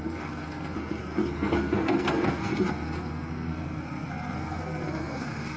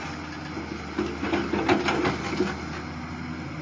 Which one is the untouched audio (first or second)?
second